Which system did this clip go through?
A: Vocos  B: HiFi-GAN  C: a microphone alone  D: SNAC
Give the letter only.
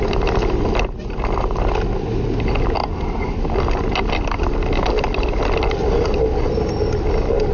C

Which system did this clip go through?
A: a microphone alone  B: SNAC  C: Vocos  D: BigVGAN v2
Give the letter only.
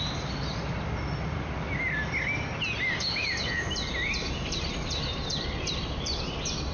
A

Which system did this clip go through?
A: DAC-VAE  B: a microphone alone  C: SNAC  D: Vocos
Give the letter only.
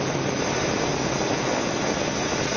B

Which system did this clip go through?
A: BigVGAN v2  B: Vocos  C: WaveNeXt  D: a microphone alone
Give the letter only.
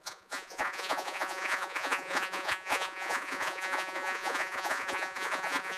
B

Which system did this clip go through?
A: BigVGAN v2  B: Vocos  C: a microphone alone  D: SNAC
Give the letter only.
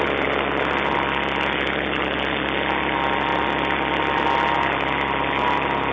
C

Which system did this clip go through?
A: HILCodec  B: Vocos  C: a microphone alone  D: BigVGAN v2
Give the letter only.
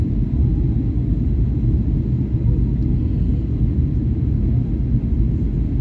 C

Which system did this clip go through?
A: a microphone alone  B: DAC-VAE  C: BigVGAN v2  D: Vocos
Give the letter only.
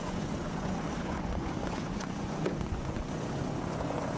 D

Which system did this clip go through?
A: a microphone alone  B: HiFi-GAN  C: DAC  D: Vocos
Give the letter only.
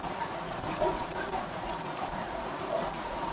D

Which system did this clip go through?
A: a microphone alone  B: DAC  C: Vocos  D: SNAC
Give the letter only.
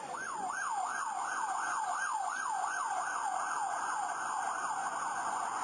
C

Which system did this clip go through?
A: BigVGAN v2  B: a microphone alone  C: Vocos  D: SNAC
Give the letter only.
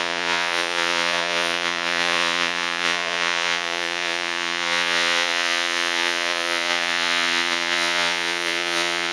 C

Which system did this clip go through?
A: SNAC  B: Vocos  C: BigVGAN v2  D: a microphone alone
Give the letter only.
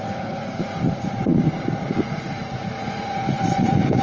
B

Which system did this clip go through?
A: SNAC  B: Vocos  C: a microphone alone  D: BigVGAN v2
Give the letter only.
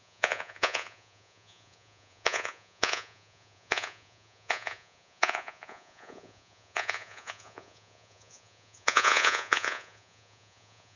B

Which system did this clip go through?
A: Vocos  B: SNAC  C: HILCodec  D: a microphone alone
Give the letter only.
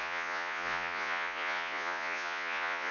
A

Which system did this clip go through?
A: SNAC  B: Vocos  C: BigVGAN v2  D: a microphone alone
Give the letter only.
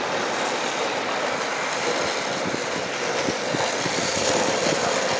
D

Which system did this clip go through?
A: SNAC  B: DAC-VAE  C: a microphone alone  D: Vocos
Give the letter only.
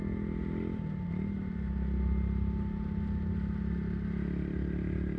C